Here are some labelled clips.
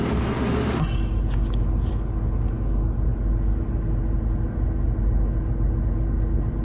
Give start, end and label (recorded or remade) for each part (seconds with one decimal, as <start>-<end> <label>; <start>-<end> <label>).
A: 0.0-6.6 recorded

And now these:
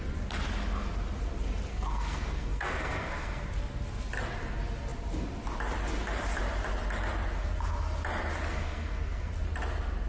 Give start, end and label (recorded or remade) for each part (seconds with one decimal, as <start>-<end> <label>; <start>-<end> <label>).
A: 0.0-1.7 recorded; 1.7-3.4 remade; 3.4-8.5 recorded; 8.5-9.3 remade; 9.3-10.1 recorded

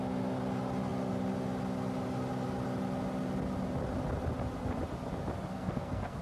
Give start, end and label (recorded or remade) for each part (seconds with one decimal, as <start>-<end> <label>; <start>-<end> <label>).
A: 0.0-5.5 recorded; 5.5-6.2 remade

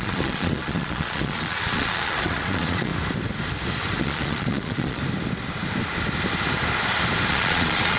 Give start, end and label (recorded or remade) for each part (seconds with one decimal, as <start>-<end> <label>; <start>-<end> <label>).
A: 0.0-2.9 remade; 2.9-4.0 recorded; 4.0-5.0 remade; 5.0-7.3 recorded; 7.3-8.0 remade

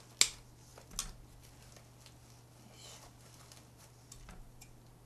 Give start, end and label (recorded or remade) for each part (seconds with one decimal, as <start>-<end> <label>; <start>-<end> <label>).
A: 0.0-5.1 recorded

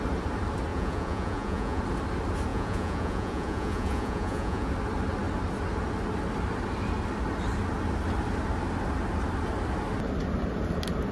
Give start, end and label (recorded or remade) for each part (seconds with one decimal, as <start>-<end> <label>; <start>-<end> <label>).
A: 0.0-0.7 recorded; 0.7-1.8 remade; 1.8-2.5 recorded; 2.5-4.7 remade; 4.7-11.1 recorded

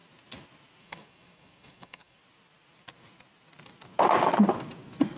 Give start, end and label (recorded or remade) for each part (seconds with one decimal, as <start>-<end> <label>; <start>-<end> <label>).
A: 0.0-0.8 recorded; 0.8-2.2 remade; 2.2-5.2 recorded